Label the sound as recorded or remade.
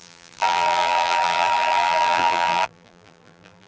remade